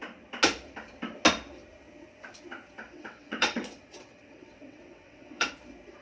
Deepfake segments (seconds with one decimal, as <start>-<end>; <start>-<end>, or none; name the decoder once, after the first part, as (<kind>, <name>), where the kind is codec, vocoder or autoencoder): 2.8-5.5 (vocoder, WaveNeXt)